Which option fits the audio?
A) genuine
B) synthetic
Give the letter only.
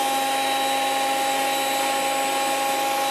A